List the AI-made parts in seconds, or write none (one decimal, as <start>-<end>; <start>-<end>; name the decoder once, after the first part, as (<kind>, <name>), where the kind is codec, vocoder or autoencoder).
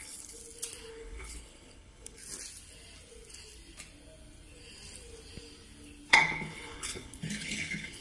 0.0-0.4 (codec, HILCodec); 0.9-2.2; 6.1-8.0